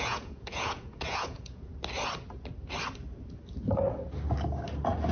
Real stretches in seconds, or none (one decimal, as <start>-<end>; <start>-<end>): 1.7-5.1